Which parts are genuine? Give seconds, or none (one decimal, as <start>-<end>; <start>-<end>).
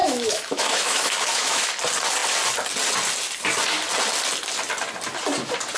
1.7-5.8